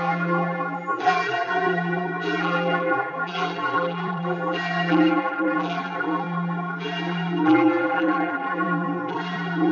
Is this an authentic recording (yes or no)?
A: no